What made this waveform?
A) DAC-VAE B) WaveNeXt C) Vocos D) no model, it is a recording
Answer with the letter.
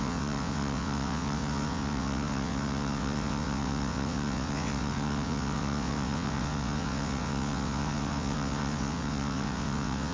B